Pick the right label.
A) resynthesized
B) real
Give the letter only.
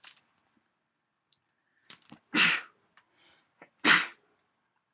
A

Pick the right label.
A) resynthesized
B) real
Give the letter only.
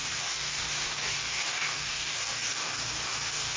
A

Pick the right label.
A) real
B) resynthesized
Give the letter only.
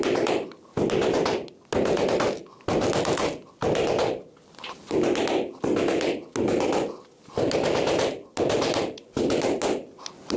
A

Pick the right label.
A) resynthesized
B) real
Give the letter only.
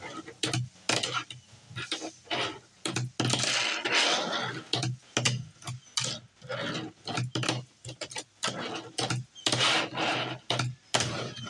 B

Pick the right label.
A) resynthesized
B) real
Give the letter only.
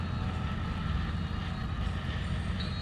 B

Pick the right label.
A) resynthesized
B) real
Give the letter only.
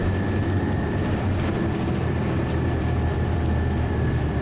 A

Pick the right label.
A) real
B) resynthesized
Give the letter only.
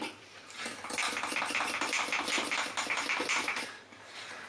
B